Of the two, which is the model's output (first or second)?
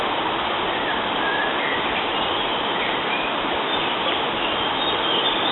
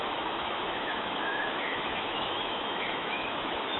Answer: second